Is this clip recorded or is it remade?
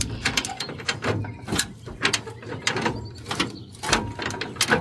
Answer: recorded